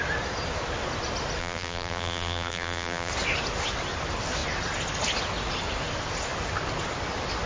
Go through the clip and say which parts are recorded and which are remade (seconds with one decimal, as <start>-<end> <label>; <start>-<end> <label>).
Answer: 0.0-1.4 recorded; 1.4-3.1 remade; 3.1-7.5 recorded